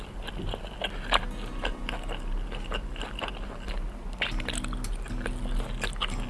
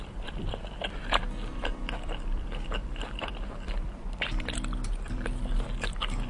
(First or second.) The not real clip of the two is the second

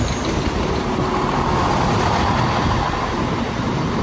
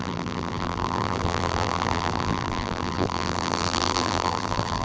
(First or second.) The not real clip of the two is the second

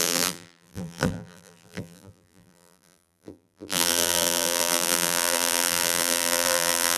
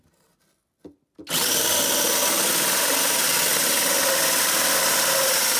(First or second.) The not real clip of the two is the first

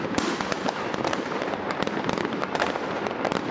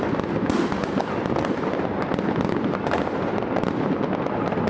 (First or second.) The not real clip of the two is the first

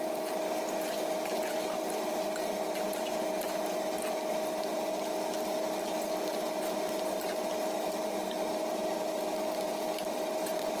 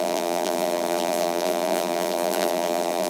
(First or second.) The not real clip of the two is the second